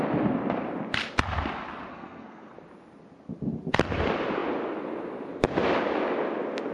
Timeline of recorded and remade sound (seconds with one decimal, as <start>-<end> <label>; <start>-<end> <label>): 0.0-1.9 recorded; 1.9-2.5 remade; 2.5-6.7 recorded